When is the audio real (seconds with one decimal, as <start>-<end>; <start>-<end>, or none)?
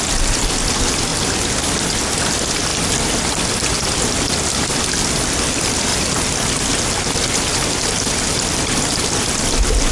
0.0-9.9